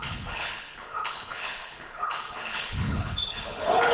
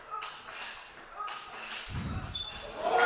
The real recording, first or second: second